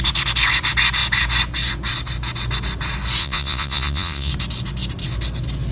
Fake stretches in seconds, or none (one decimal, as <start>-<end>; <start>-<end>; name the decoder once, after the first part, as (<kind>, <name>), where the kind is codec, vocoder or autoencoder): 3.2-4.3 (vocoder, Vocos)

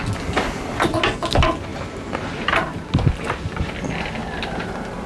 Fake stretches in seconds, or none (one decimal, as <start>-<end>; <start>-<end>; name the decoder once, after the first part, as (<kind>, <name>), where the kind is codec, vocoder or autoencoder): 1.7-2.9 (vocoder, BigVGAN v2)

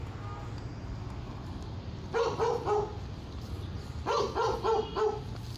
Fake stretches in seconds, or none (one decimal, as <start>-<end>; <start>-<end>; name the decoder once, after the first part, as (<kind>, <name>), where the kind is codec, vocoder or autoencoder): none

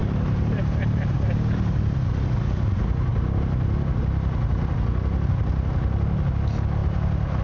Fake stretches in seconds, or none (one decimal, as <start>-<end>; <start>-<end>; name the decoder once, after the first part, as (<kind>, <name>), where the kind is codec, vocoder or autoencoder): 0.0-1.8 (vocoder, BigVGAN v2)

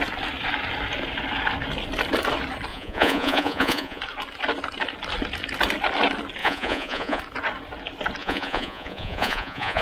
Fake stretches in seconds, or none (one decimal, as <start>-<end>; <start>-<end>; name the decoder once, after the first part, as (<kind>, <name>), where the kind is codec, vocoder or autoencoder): 2.7-4.0 (vocoder, Vocos); 6.4-7.2; 8.2-9.8

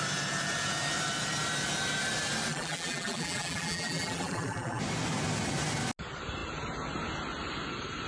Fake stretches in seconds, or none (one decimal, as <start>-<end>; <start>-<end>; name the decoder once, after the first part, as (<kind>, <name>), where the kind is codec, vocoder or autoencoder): 2.5-4.8 (vocoder, BigVGAN v2)